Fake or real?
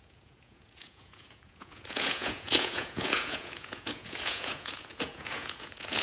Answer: fake